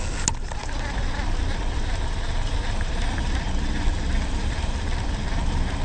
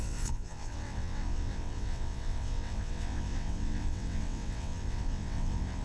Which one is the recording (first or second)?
first